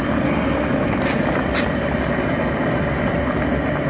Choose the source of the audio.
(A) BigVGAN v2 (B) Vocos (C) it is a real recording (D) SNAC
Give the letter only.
C